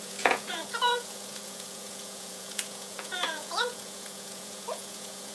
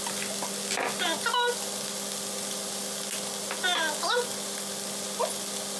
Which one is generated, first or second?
first